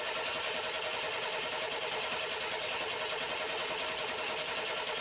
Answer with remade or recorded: recorded